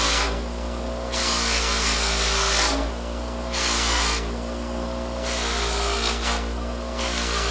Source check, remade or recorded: remade